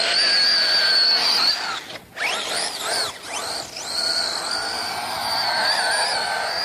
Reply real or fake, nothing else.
real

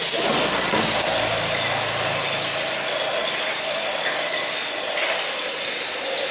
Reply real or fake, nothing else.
real